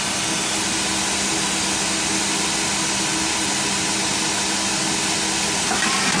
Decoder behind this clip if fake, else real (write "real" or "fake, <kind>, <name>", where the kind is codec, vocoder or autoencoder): real